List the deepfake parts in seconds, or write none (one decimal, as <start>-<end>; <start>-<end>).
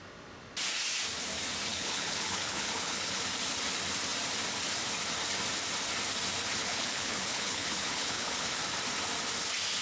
1.7-3.2; 6.6-8.6